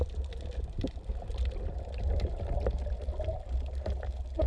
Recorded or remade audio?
recorded